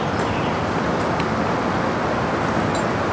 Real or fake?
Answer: real